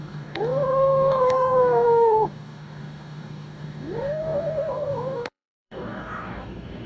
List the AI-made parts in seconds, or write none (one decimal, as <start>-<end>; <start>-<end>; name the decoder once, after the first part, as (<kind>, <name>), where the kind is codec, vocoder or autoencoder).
0.0-6.9 (codec, DAC)